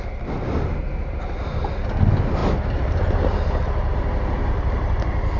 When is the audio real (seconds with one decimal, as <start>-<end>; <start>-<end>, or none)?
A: 0.0-4.4; 5.0-5.4